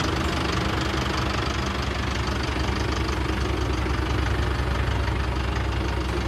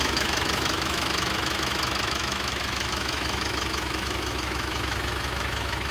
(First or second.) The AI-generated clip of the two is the second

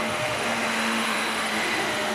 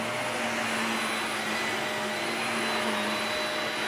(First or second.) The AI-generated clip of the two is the first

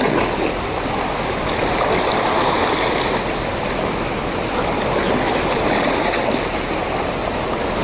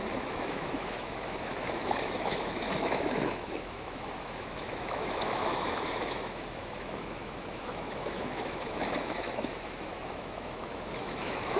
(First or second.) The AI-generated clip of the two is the second